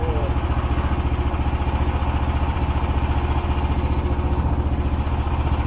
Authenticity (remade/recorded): recorded